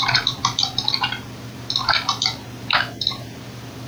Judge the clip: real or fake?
fake